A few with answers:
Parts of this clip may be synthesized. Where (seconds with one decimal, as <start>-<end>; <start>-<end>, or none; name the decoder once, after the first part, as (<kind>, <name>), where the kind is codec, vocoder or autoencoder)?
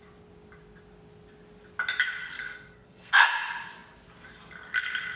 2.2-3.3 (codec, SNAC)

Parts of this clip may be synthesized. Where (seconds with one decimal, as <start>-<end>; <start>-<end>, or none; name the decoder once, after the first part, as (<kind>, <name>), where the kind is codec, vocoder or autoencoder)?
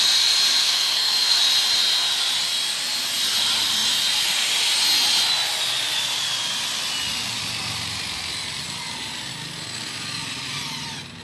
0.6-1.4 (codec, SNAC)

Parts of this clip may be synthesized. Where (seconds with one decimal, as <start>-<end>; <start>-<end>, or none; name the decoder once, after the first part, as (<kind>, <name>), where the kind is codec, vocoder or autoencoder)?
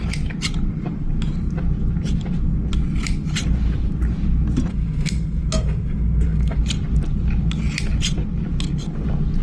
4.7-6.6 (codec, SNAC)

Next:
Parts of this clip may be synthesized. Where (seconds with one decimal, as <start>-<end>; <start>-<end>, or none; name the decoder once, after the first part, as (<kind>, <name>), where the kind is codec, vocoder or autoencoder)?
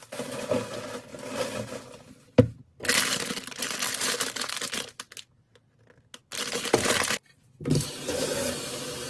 none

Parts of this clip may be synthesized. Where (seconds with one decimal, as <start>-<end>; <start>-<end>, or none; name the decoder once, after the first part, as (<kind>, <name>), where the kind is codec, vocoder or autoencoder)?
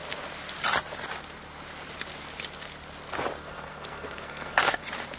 3.4-4.8 (codec, SNAC)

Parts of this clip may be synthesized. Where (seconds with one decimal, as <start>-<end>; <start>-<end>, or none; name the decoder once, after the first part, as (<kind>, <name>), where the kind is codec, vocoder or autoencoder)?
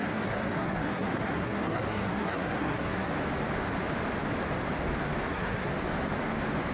0.0-3.1 (codec, SNAC); 5.3-5.7